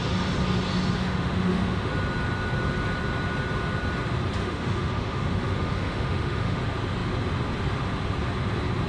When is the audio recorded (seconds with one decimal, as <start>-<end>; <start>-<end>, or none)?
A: 0.0-1.0; 1.9-4.4; 6.6-8.9